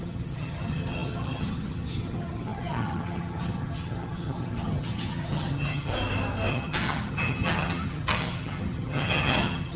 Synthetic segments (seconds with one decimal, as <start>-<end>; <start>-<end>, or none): 0.0-5.9; 6.5-9.8